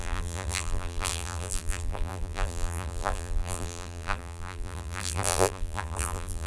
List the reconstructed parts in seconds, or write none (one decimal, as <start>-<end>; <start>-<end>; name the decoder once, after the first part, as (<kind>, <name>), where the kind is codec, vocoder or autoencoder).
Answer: 0.0-6.5 (vocoder, BigVGAN v2)